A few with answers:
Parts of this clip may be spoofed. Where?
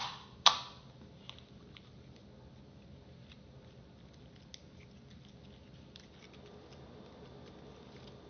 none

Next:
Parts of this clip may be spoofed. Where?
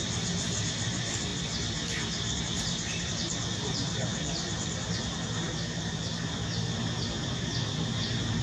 0.0-1.3; 2.4-6.1; 7.0-8.4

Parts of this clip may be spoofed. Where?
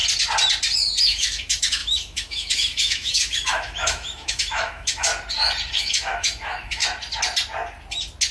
1.0-5.1; 5.7-6.8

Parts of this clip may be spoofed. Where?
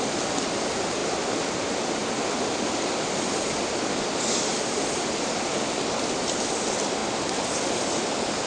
none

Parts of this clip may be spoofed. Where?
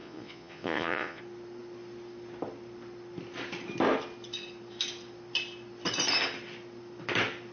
0.0-1.2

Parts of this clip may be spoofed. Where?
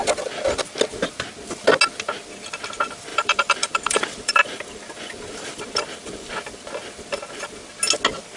3.1-6.3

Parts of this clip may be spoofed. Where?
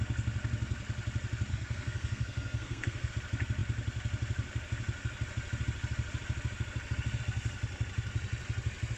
1.5-3.1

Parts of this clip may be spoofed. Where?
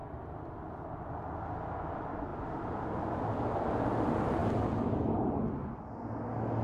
none